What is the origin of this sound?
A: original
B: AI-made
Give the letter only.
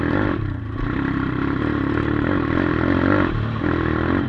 A